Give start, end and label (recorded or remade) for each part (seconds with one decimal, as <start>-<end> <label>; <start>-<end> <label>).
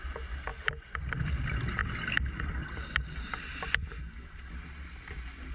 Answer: 0.0-5.5 recorded